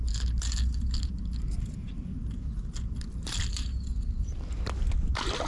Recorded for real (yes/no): no